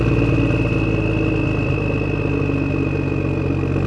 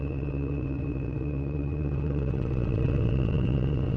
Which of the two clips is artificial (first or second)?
second